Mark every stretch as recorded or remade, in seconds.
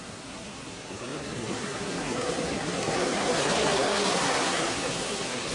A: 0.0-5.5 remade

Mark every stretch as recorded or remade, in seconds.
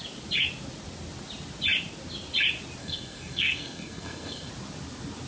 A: 0.0-2.8 recorded; 2.8-4.5 remade; 4.5-5.3 recorded